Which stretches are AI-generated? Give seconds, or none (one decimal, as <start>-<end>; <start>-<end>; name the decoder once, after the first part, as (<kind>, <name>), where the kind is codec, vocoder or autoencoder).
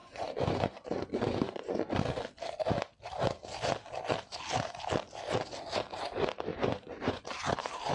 0.0-1.9 (vocoder, Vocos); 6.5-7.2